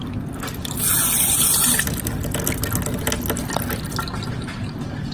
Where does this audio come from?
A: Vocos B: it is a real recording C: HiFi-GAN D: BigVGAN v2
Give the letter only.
B